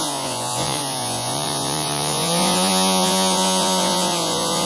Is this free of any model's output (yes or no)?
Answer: no